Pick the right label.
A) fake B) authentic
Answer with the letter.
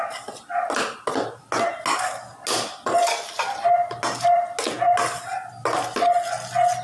B